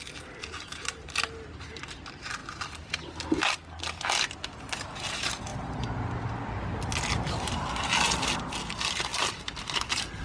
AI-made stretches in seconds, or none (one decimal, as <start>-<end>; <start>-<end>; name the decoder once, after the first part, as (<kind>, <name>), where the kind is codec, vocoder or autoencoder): none